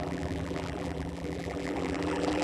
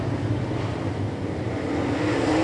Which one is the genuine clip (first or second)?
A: second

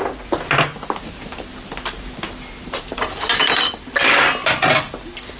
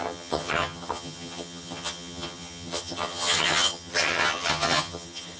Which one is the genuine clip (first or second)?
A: first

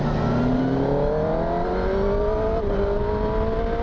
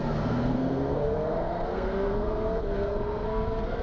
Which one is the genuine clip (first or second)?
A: first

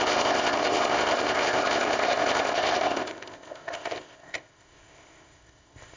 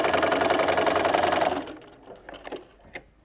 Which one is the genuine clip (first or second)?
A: second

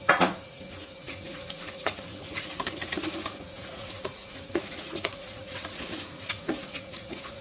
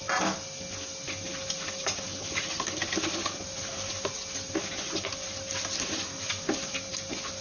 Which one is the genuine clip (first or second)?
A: second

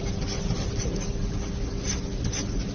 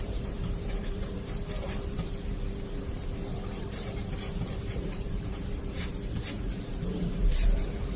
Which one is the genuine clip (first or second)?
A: first